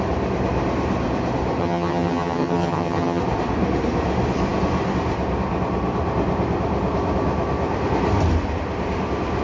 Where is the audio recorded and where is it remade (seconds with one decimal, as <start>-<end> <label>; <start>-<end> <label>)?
0.0-1.6 recorded; 1.6-3.2 remade; 3.2-9.4 recorded